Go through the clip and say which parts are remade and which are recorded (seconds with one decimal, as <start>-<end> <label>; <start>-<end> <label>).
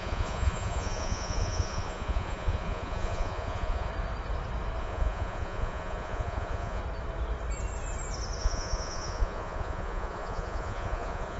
0.0-3.9 remade; 3.9-4.8 recorded; 4.8-6.8 remade; 6.8-8.4 recorded; 8.4-11.4 remade